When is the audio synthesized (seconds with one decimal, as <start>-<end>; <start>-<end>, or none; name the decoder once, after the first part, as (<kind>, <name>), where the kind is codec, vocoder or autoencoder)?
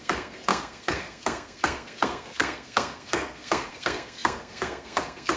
0.0-5.4 (codec, SNAC)